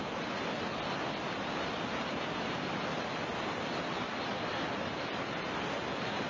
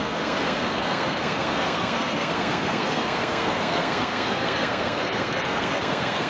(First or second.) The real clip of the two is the first